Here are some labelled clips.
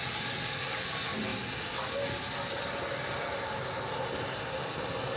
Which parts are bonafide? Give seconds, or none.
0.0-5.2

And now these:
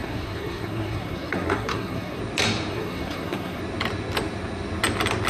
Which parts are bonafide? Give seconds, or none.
2.2-2.7; 3.6-5.3

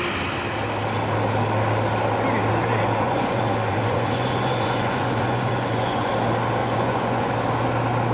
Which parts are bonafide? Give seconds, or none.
0.0-2.6; 6.1-6.6; 7.3-8.1

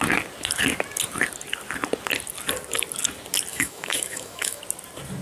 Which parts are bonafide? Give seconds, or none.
0.0-3.5; 4.6-5.2

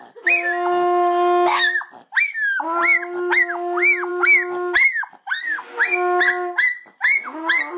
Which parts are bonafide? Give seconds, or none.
0.0-7.8

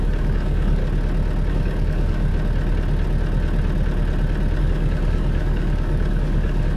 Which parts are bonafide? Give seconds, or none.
0.8-1.5; 2.3-4.6

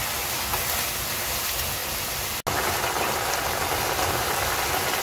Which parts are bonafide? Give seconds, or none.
0.0-5.0